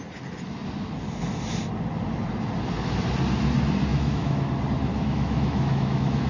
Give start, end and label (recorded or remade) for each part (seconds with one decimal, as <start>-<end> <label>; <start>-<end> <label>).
0.0-3.9 recorded; 3.9-4.5 remade; 4.5-4.9 recorded; 4.9-6.3 remade